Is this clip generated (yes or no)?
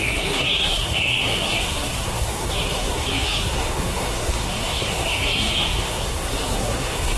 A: yes